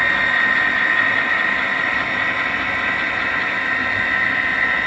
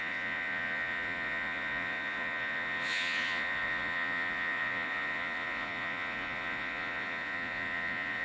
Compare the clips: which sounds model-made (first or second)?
second